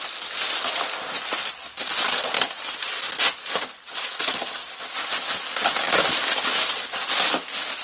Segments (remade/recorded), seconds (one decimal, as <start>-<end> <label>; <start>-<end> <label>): 0.0-7.8 recorded